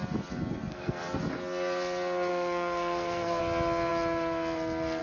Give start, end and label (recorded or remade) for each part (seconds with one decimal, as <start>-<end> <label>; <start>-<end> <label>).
0.0-0.7 recorded; 0.7-1.2 remade; 1.2-2.3 recorded; 2.3-3.4 remade; 3.4-5.0 recorded